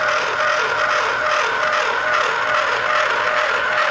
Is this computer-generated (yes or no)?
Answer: no